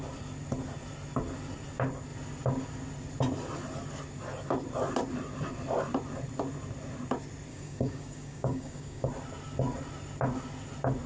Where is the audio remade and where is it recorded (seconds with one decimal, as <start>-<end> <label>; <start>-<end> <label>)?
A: 0.0-7.5 recorded; 7.5-9.1 remade; 9.1-11.1 recorded